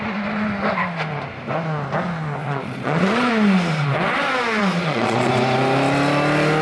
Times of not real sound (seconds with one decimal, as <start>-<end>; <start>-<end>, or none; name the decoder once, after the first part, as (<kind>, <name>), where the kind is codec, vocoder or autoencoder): 2.4-3.3 (vocoder, Vocos); 4.6-5.3